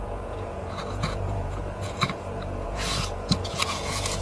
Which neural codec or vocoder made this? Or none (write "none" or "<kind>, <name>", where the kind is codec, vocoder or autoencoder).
vocoder, Vocos